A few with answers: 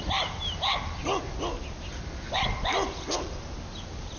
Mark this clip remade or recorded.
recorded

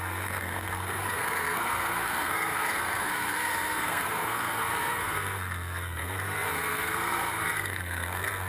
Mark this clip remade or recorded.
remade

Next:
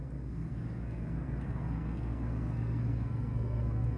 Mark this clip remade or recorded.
remade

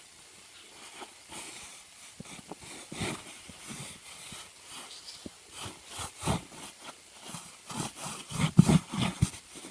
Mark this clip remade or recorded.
recorded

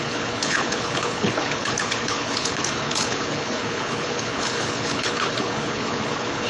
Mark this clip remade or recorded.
remade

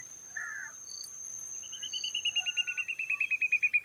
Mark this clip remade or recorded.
remade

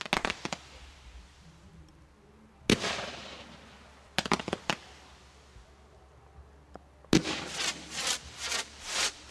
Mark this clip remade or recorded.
recorded